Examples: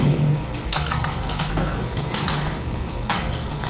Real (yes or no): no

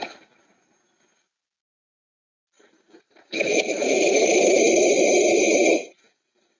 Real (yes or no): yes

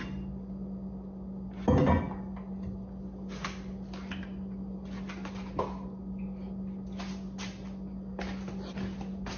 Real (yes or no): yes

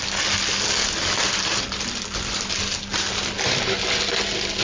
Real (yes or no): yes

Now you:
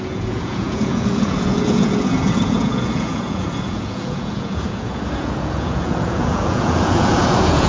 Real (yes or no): no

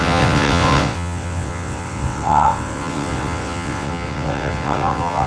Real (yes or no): no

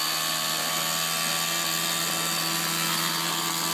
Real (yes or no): yes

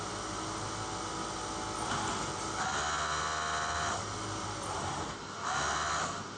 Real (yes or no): yes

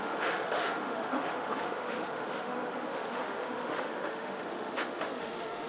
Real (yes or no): no